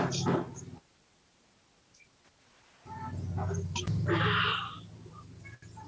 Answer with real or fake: real